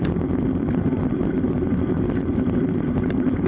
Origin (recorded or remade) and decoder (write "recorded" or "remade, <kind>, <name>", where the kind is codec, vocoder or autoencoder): recorded